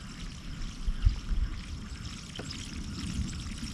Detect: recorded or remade recorded